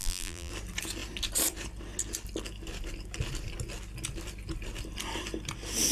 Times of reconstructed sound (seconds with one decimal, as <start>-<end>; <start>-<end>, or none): 0.0-0.5